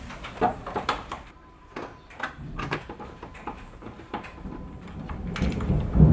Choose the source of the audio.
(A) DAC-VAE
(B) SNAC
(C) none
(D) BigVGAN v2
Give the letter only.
D